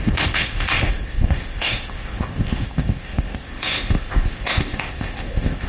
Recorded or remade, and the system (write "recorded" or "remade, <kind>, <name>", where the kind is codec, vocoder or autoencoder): remade, codec, ZipCodec